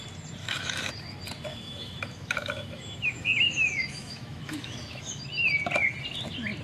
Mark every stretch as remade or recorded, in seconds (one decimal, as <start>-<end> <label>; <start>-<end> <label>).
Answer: 0.0-0.4 recorded; 0.4-0.9 remade; 0.9-1.5 recorded; 1.5-5.2 remade; 5.2-6.6 recorded